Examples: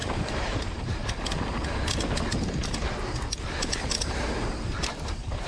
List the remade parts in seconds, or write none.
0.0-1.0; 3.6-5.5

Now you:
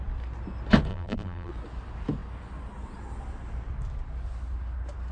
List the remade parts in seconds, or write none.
0.9-1.5